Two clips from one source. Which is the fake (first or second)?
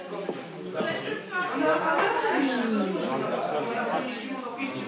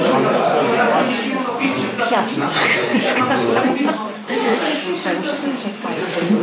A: second